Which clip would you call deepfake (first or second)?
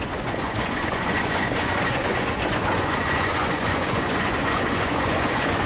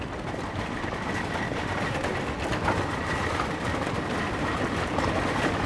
first